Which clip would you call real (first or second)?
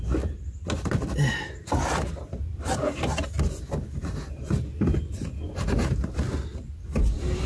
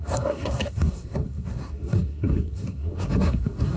first